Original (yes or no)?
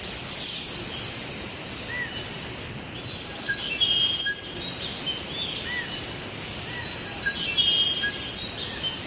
yes